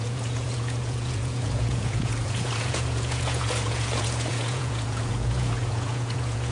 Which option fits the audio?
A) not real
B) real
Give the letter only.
A